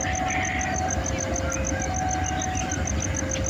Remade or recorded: recorded